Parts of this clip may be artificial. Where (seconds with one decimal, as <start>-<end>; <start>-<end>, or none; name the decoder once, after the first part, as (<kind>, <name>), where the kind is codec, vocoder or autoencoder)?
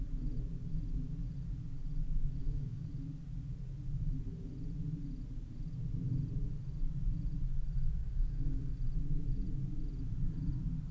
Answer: 2.4-2.9 (codec, DAC); 8.0-8.7